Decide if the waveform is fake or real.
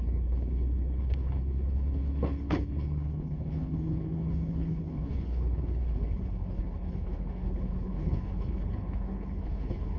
fake